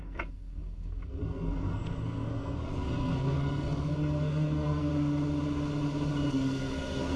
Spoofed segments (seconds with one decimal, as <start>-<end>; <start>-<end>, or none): 0.0-4.9; 6.3-7.2